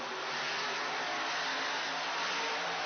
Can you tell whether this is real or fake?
real